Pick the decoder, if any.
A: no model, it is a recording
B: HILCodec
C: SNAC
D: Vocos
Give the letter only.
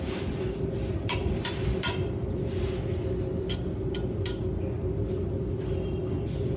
A